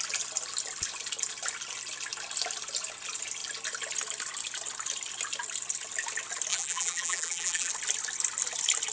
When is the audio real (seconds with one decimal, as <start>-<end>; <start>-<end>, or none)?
0.0-6.5; 7.7-8.9